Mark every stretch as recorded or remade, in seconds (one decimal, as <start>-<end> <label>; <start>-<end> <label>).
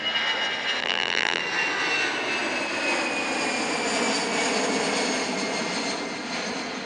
0.0-0.8 recorded; 0.8-1.4 remade; 1.4-6.9 recorded